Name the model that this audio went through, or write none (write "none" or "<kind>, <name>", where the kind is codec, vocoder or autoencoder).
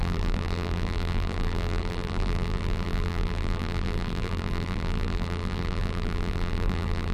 vocoder, BigVGAN v2